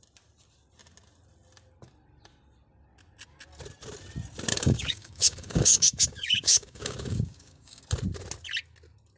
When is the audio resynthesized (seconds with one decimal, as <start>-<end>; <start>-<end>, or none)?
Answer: 4.5-7.8